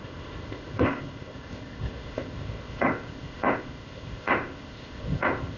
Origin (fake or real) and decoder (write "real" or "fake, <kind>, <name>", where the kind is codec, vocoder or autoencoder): fake, codec, ZipCodec